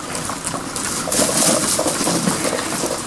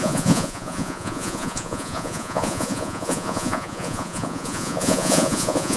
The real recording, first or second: first